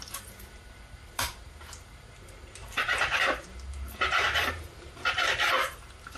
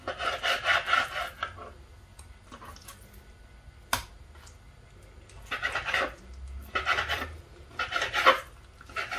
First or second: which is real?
second